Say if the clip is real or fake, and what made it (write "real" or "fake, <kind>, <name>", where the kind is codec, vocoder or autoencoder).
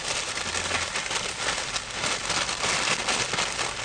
real